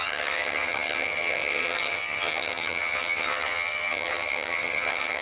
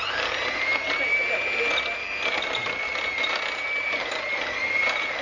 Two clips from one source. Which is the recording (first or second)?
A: second